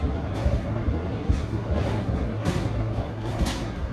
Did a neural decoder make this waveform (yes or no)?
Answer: yes